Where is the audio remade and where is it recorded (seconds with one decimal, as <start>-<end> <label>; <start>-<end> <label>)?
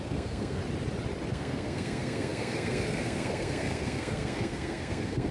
0.0-0.6 remade; 0.6-1.3 recorded; 1.3-5.3 remade